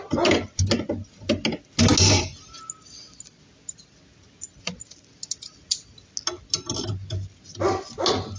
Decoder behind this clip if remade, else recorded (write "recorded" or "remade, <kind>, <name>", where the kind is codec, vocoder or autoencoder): recorded